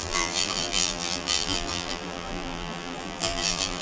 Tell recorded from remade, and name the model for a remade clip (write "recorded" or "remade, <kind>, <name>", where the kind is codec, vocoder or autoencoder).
remade, vocoder, BigVGAN v2